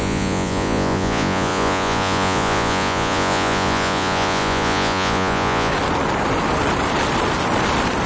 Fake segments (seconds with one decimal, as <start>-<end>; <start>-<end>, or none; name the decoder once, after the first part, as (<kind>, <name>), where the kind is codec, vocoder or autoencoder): 0.0-5.7 (vocoder, Vocos)